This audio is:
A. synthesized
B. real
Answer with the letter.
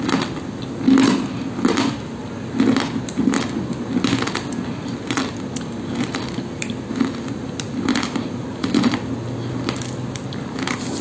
B